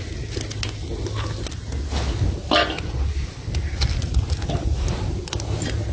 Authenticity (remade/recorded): recorded